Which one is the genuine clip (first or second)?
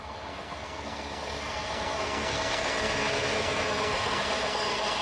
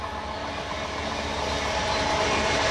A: second